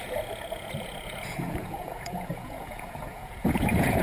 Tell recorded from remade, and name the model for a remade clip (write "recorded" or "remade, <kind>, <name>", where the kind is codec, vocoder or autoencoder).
remade, vocoder, Vocos